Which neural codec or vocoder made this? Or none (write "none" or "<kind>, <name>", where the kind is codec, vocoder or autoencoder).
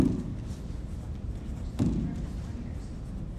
none